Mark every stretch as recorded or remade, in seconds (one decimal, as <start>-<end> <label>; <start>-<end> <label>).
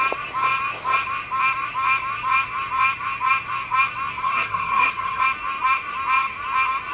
0.0-4.2 recorded; 4.2-5.2 remade; 5.2-6.9 recorded